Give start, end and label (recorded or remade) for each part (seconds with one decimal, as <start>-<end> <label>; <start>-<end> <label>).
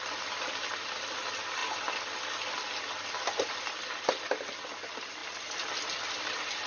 0.0-6.7 recorded